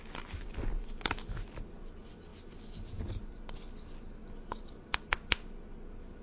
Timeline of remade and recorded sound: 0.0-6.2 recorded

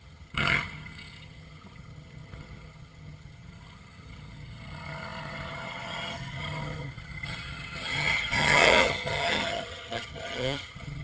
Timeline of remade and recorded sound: 0.0-11.0 remade